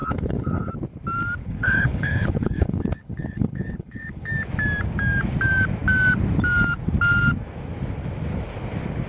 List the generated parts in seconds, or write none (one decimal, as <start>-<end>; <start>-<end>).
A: 0.0-0.7; 1.4-4.3